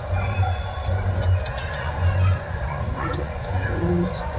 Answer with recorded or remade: remade